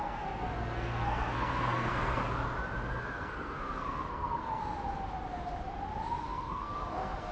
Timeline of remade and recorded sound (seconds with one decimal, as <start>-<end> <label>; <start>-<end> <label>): 0.0-2.2 remade; 2.2-2.9 recorded; 2.9-4.6 remade; 4.6-6.2 recorded; 6.2-7.3 remade

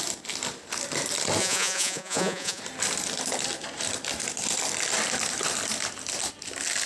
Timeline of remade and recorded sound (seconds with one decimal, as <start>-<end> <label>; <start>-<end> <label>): 0.0-1.4 recorded; 1.4-2.6 remade; 2.6-6.9 recorded

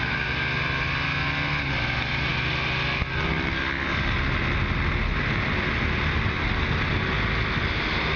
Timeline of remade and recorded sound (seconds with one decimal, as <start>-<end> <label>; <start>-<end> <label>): 0.0-8.2 recorded

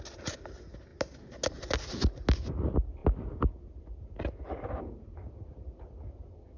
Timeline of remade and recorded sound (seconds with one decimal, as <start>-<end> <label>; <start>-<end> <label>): 0.0-6.6 recorded

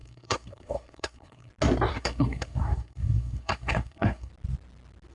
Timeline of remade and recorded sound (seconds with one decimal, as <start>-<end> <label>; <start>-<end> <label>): 0.0-1.5 remade; 1.5-1.9 recorded; 1.9-4.3 remade; 4.3-5.1 recorded